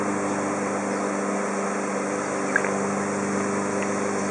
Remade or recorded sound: recorded